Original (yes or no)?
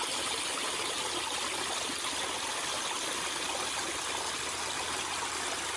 yes